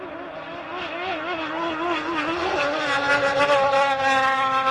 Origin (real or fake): real